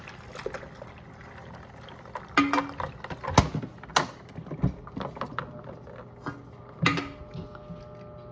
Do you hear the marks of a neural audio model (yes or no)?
no